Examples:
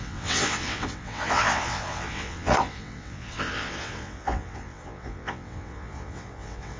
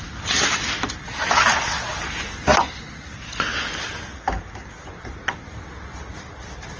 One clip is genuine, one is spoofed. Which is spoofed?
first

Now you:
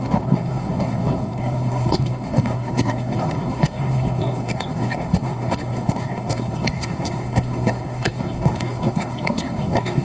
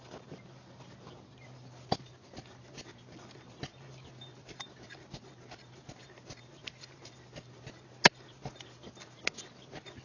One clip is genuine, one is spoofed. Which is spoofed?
first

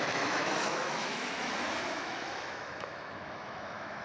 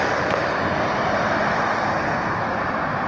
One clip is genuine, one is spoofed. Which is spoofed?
first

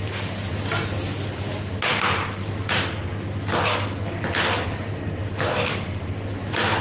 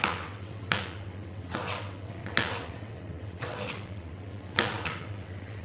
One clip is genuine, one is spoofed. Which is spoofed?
second